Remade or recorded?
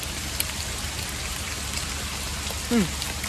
recorded